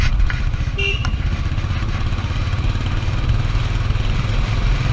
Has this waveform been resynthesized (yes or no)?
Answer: no